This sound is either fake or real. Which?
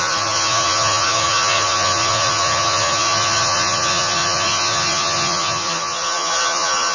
fake